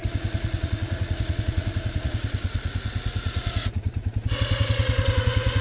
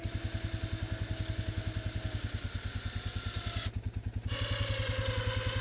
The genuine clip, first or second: second